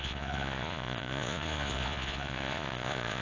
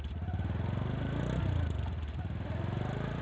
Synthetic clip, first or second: first